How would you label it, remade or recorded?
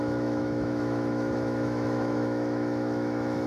remade